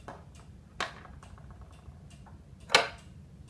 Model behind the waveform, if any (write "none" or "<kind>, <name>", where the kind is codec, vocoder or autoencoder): none